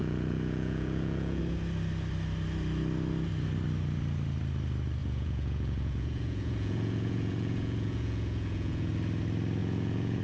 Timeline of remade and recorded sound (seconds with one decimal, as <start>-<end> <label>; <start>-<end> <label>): 0.0-1.4 remade; 1.4-5.0 recorded; 5.0-8.9 remade; 8.9-9.6 recorded; 9.6-10.2 remade